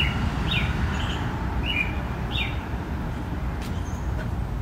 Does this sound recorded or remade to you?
recorded